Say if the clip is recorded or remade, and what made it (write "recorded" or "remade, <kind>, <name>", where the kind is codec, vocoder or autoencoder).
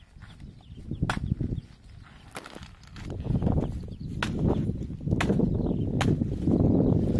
recorded